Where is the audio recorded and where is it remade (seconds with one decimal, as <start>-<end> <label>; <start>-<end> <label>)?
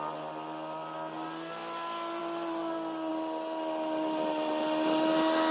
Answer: 0.0-5.5 recorded